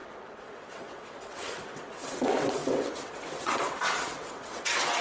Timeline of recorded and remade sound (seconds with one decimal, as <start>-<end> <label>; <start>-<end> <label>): 0.0-5.0 remade